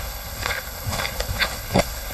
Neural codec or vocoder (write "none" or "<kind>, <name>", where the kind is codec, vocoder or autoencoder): codec, HILCodec